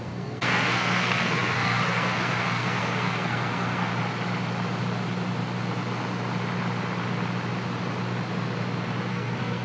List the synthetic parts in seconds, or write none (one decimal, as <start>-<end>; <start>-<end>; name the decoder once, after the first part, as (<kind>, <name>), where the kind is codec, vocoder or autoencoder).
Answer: 0.0-3.9 (codec, SNAC); 9.1-9.6